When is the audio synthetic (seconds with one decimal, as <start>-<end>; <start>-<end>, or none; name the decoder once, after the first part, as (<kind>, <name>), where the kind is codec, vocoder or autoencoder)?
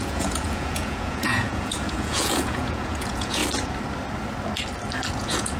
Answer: 0.0-3.4 (vocoder, Vocos); 5.1-5.6